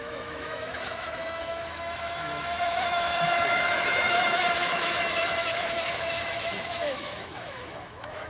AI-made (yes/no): yes